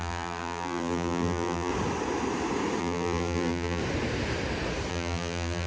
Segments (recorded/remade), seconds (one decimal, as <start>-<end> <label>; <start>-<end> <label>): 0.0-1.7 remade; 1.7-2.8 recorded; 2.8-3.8 remade; 3.8-4.9 recorded; 4.9-5.7 remade